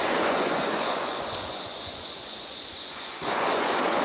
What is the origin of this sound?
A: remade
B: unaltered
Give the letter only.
A